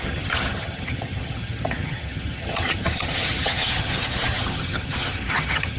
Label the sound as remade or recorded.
remade